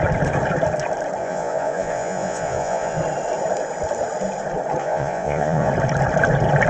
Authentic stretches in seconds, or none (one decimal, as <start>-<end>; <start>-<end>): 0.0-1.2; 3.0-4.8; 5.7-6.7